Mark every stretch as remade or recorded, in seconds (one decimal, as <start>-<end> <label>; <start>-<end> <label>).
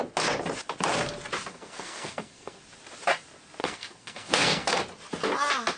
0.0-1.5 recorded; 1.5-2.6 remade; 2.6-3.6 recorded; 3.6-4.8 remade; 4.8-5.8 recorded